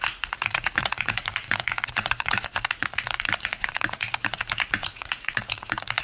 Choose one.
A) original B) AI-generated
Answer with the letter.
B